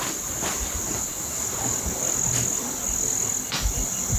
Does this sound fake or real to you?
real